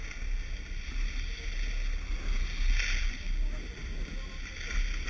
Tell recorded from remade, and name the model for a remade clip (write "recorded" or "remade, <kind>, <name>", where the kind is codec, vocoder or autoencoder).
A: recorded